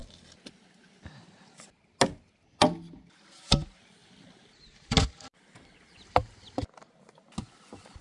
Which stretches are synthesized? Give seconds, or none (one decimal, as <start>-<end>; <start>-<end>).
none